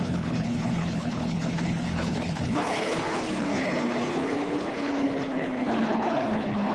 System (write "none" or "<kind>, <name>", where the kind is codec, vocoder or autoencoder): codec, HILCodec